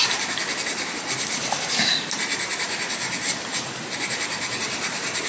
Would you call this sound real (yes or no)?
yes